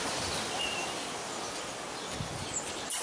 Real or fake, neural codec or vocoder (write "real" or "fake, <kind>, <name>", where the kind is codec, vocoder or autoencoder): real